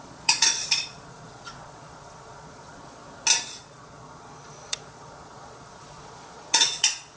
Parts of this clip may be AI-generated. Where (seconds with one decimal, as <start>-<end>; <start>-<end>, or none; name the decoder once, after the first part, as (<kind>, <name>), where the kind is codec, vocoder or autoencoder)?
0.0-3.0 (vocoder, Vocos); 3.6-7.2